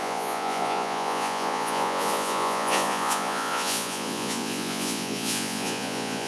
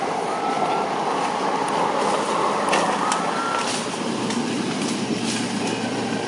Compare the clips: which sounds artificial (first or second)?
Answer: first